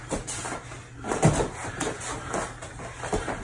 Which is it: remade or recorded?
recorded